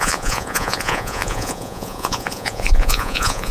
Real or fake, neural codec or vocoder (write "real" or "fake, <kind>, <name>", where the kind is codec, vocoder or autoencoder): fake, vocoder, Vocos